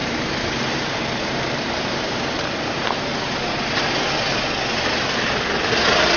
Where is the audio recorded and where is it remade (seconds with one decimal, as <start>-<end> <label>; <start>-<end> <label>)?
0.0-3.3 remade; 3.3-6.2 recorded